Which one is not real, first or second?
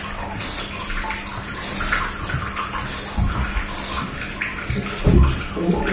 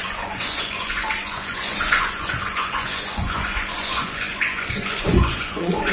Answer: second